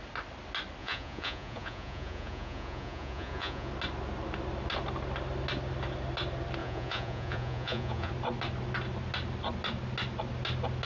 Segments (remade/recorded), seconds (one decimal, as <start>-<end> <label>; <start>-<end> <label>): 0.0-0.8 recorded; 0.8-3.7 remade; 3.7-6.6 recorded; 6.6-8.1 remade; 8.1-10.9 recorded